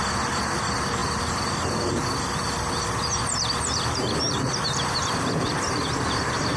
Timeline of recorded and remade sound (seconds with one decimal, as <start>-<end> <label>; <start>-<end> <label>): 0.0-6.6 remade